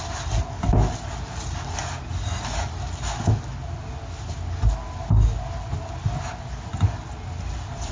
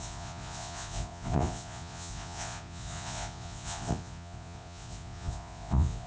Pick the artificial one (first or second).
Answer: second